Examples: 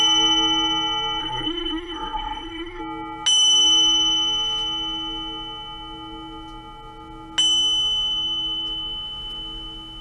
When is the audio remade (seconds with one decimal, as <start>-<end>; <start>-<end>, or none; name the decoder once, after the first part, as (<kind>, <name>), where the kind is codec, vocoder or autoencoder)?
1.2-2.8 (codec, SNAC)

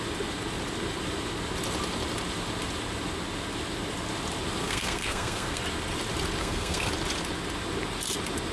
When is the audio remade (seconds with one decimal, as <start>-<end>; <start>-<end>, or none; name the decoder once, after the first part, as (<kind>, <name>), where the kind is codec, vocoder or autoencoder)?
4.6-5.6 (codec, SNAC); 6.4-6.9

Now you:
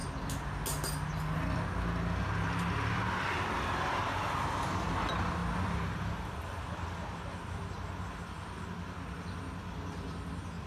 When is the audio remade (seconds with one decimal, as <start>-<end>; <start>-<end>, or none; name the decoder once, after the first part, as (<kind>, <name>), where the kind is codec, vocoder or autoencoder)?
none

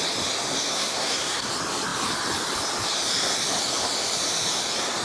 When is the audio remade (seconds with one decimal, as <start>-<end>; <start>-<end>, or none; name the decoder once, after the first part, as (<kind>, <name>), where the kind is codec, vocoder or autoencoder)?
0.7-1.5 (codec, SNAC)

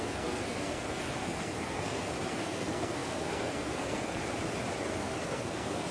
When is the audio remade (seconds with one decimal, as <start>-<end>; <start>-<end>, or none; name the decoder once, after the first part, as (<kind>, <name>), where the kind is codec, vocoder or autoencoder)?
0.0-4.2 (codec, SNAC); 4.8-5.9

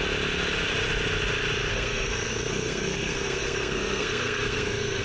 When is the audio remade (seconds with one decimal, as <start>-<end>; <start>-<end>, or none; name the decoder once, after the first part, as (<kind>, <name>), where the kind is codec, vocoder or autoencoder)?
1.7-5.0 (codec, SNAC)

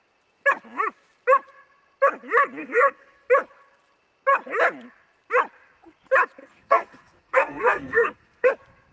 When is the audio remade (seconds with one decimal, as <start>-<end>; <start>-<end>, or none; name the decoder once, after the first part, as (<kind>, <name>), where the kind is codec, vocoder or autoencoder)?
2.6-3.3 (codec, SNAC); 6.4-8.5

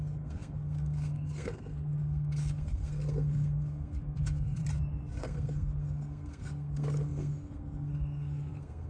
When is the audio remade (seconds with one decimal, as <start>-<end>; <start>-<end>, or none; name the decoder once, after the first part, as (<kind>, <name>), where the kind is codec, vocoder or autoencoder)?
0.0-4.6 (codec, SNAC); 5.2-8.9